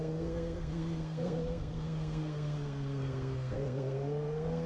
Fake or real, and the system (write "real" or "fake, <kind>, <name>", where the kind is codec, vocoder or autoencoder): fake, codec, SNAC